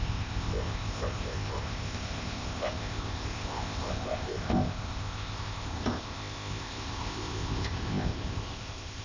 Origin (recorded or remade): remade